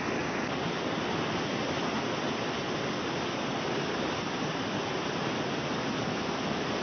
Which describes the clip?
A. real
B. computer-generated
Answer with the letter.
A